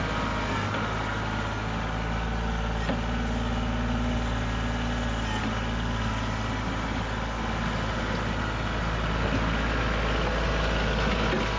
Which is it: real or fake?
real